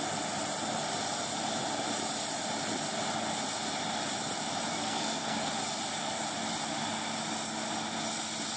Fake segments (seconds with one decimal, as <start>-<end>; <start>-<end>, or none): 4.7-5.5